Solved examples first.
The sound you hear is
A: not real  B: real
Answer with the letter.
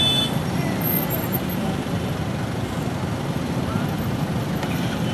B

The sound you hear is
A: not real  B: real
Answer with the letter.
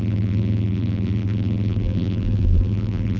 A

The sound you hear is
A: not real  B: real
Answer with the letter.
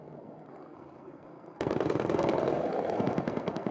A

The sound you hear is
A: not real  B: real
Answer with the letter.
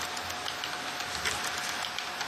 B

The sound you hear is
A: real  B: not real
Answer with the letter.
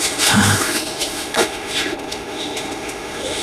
B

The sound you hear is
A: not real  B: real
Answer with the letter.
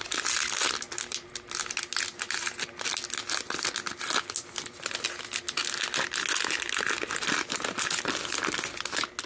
B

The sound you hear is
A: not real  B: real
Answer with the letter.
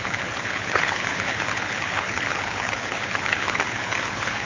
A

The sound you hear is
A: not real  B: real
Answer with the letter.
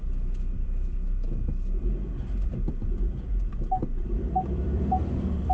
A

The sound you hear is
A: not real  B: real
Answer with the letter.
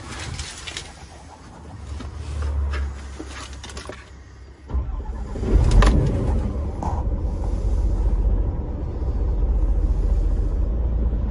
B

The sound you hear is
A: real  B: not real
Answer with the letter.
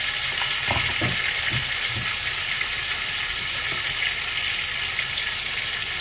A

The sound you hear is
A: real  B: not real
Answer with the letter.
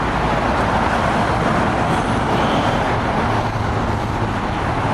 A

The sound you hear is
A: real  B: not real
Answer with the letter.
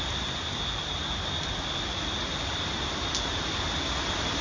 A